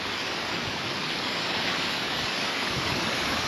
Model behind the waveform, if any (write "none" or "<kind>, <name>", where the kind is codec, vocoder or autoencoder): codec, DAC